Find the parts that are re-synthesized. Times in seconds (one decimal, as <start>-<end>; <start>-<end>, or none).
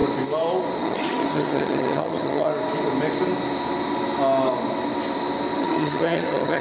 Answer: 0.8-2.5; 5.6-6.6